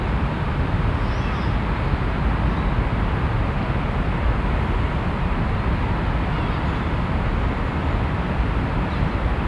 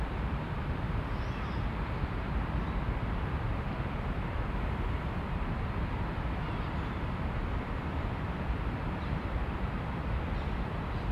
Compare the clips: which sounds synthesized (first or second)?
second